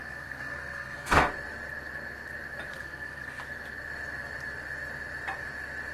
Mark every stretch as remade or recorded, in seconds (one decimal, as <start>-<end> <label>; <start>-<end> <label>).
0.0-1.3 remade; 1.3-2.7 recorded; 2.7-3.4 remade; 3.4-5.9 recorded